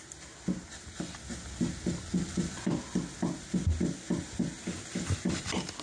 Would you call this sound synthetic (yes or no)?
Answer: no